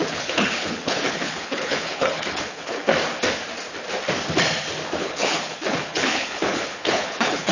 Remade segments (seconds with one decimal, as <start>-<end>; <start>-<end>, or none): 0.0-2.9; 5.0-7.5